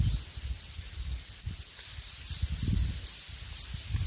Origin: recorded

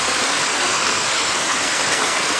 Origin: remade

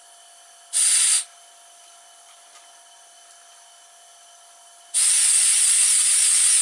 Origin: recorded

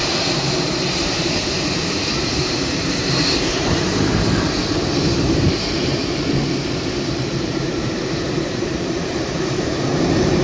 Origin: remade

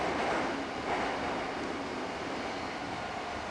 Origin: recorded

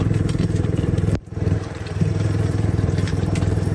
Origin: remade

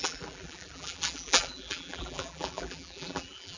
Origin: remade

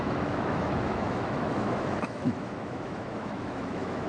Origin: remade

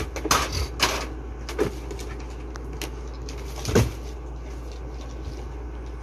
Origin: recorded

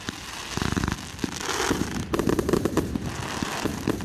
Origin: remade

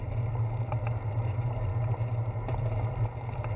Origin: recorded